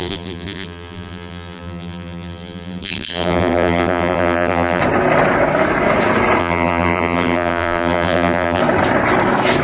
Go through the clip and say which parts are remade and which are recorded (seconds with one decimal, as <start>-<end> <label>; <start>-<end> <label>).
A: 0.0-4.8 remade; 4.8-6.4 recorded; 6.4-8.6 remade; 8.6-9.6 recorded